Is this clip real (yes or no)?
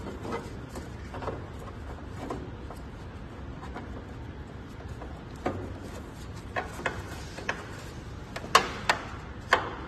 yes